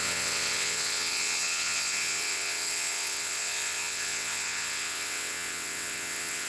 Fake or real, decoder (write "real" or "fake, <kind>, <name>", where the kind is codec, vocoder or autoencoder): fake, vocoder, WaveNeXt